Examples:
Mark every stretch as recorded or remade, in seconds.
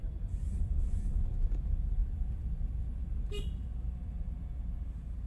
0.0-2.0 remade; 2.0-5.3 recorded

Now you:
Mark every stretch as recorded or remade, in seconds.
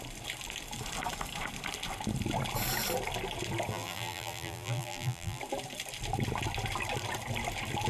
0.0-3.7 recorded; 3.7-5.4 remade; 5.4-7.9 recorded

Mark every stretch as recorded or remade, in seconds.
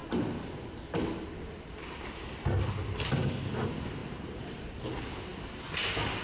0.0-4.0 recorded; 4.0-4.8 remade; 4.8-6.2 recorded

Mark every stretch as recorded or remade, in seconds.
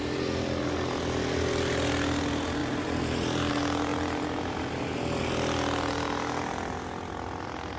0.0-2.6 recorded; 2.6-3.5 remade; 3.5-7.8 recorded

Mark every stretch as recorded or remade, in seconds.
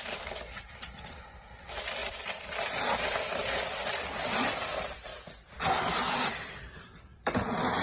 0.0-5.1 remade; 5.1-6.3 recorded; 6.3-7.8 remade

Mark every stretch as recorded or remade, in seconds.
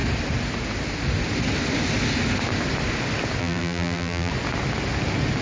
0.0-3.4 recorded; 3.4-4.3 remade; 4.3-5.4 recorded